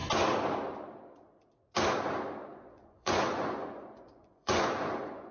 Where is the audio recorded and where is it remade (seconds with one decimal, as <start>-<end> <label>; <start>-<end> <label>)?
0.0-2.5 recorded; 2.5-5.3 remade